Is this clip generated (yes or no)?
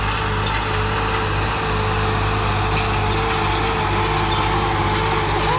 no